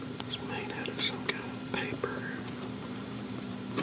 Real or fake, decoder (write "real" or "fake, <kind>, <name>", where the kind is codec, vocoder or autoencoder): fake, vocoder, BigVGAN v2